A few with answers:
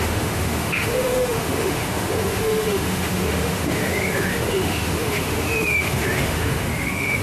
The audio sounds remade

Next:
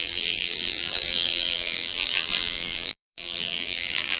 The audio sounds remade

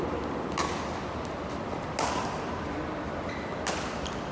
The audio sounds recorded